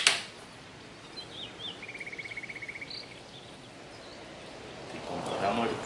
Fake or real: real